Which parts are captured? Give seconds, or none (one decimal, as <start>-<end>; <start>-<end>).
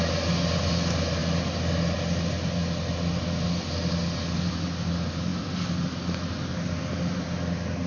0.0-7.9